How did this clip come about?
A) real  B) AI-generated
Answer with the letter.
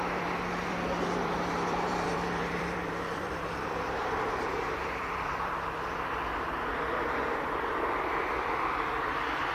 B